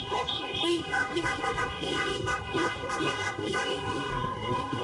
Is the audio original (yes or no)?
no